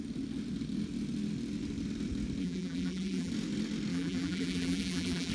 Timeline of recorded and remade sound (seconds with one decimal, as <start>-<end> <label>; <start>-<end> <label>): 0.0-2.4 recorded; 2.4-3.3 remade; 3.3-3.9 recorded; 3.9-5.3 remade